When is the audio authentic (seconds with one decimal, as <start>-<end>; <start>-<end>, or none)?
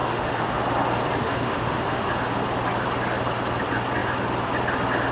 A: 0.6-1.2; 2.1-5.1